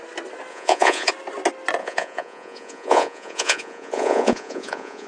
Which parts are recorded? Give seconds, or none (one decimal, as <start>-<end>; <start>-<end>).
0.0-0.5; 1.1-1.8